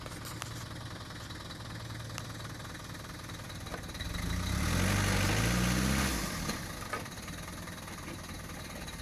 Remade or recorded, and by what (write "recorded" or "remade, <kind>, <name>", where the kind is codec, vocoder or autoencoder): recorded